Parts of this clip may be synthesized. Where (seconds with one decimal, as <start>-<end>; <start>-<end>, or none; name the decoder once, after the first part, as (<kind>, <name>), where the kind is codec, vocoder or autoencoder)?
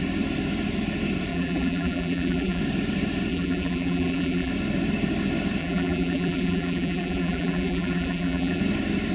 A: 1.3-2.6 (vocoder, BigVGAN v2); 3.3-4.5; 5.6-8.6